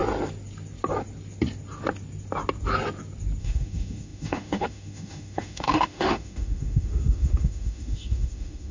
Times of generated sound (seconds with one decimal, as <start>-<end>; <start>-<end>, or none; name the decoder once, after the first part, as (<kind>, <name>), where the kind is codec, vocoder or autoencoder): 3.4-8.7 (autoencoder, DAC-VAE)